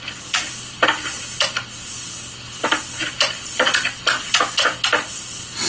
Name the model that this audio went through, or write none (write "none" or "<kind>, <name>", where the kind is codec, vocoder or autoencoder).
none